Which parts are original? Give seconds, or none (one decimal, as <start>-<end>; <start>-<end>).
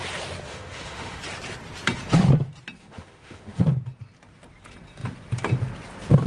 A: 0.0-0.5; 1.2-2.8; 3.6-6.3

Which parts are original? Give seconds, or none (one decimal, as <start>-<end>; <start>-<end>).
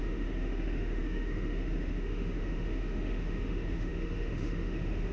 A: none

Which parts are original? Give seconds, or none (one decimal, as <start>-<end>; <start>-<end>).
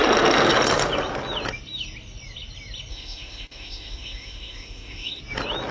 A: 0.0-2.9; 5.2-5.7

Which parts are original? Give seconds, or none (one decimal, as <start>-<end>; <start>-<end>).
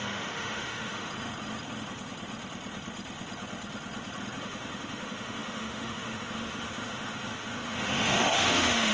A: 1.1-4.4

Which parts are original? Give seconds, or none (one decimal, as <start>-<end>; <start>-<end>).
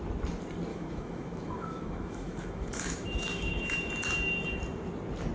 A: 0.0-0.7; 3.9-5.3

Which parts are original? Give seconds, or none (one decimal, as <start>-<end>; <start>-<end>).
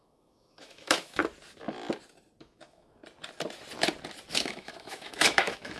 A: 1.2-2.4; 3.0-4.3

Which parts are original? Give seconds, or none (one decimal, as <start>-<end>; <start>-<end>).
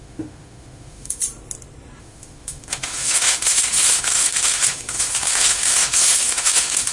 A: 1.2-2.0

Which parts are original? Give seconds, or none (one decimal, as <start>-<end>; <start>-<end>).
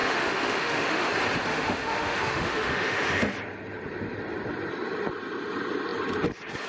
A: 1.1-1.5; 3.3-6.7